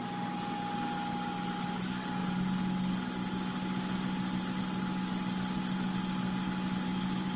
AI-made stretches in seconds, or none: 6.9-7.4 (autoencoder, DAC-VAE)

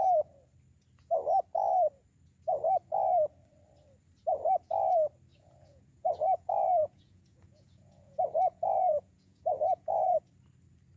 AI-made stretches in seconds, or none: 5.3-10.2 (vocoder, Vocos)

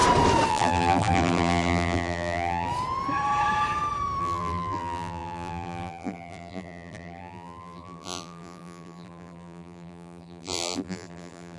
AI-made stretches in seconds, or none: 0.5-2.7 (vocoder, BigVGAN v2); 4.2-11.6

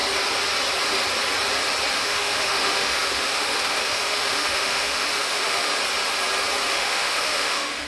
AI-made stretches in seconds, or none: 1.9-5.7 (autoencoder, DAC-VAE); 6.7-7.9

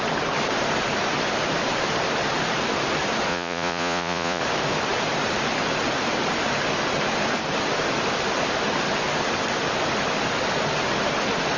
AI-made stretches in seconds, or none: 3.3-4.4 (vocoder, Vocos)